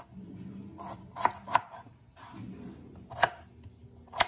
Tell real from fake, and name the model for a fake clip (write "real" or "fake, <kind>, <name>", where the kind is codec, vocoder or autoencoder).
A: real